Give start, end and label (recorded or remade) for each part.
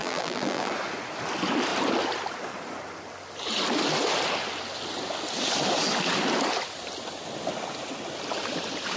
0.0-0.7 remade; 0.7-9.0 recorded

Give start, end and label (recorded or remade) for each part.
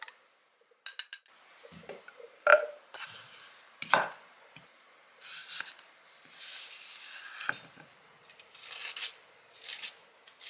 0.0-2.5 recorded; 2.5-4.4 remade; 4.4-10.5 recorded